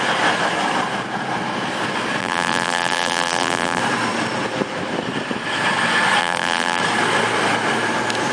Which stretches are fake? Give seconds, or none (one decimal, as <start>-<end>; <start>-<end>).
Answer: 2.2-3.8; 6.2-6.8